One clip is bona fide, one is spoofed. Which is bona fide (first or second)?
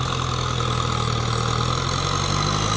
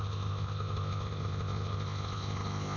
first